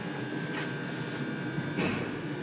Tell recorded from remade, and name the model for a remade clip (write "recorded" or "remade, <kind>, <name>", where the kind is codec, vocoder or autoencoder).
recorded